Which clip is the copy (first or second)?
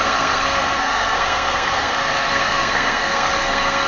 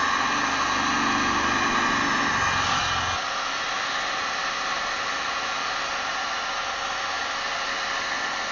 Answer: first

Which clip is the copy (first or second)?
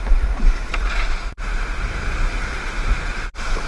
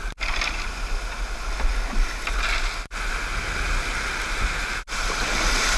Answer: first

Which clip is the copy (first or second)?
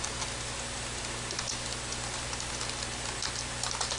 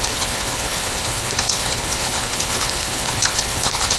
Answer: second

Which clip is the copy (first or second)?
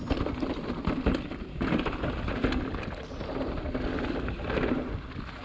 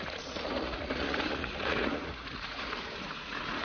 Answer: second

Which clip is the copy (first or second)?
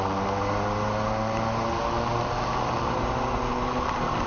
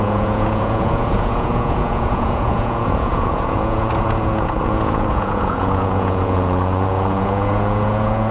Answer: second